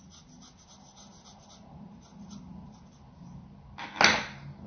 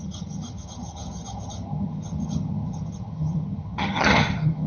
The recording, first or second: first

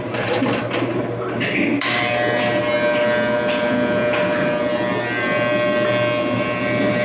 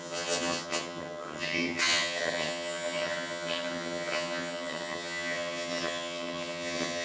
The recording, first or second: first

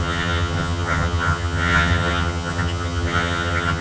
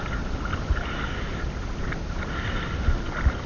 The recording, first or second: second